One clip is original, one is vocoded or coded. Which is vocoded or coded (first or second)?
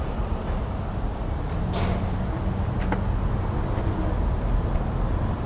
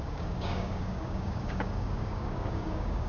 second